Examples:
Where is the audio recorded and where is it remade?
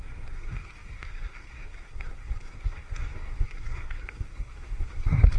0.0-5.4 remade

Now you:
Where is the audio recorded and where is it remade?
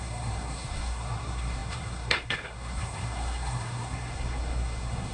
0.0-5.1 remade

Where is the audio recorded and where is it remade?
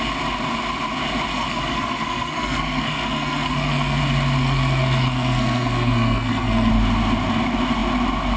0.0-1.3 recorded; 1.3-4.0 remade; 4.0-4.4 recorded; 4.4-6.7 remade; 6.7-8.4 recorded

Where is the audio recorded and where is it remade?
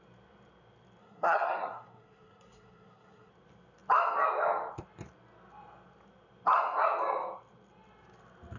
0.0-1.0 recorded; 1.0-3.3 remade; 3.3-8.6 recorded